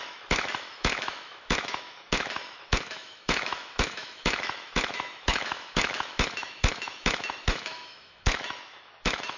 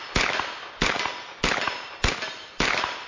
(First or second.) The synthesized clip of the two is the first